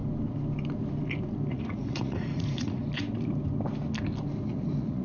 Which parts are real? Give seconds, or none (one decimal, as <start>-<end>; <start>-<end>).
0.0-1.5; 2.8-4.5